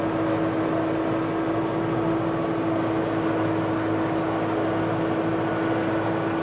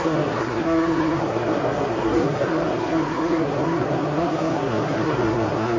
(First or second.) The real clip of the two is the first